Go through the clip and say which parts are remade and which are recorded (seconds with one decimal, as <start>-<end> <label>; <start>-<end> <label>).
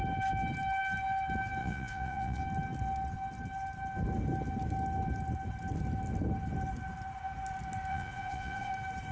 0.0-1.6 recorded; 1.6-2.4 remade; 2.4-7.9 recorded; 7.9-8.7 remade; 8.7-9.1 recorded